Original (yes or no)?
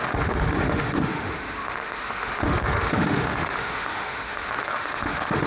no